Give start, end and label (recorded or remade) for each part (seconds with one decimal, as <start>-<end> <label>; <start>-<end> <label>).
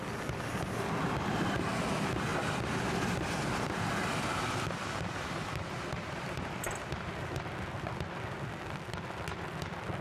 0.0-2.3 recorded; 2.3-6.4 remade; 6.4-10.0 recorded